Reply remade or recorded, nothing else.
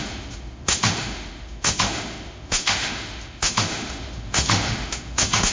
remade